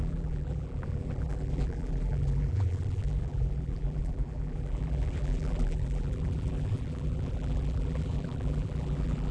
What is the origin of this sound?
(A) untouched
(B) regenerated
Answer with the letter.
B